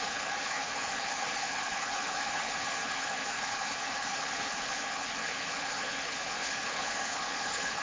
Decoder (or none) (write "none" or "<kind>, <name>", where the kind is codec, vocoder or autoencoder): codec, HILCodec